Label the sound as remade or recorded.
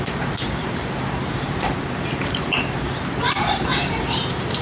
remade